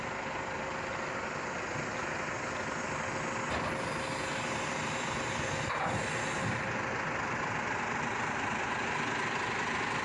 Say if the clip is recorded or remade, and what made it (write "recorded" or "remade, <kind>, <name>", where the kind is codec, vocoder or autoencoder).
recorded